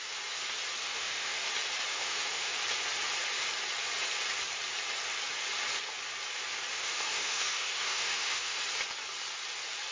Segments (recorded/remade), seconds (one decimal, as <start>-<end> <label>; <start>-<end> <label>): 0.0-0.8 recorded; 0.8-1.5 remade; 1.5-1.9 recorded; 1.9-2.5 remade; 2.5-6.7 recorded; 6.7-8.6 remade; 8.6-9.9 recorded